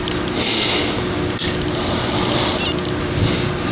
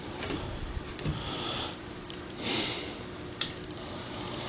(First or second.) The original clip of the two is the first